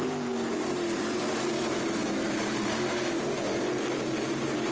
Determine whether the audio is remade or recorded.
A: recorded